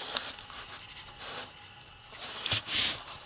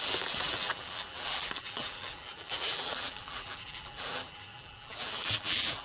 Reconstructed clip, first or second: second